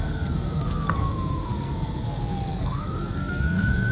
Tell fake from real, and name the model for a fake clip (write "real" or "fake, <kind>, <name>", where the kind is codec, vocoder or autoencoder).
fake, codec, SNAC